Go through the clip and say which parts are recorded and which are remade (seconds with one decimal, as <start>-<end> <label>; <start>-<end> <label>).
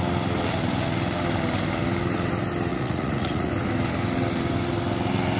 0.0-2.7 recorded; 2.7-3.5 remade; 3.5-5.4 recorded